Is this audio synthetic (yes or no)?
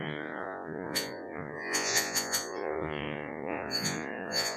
yes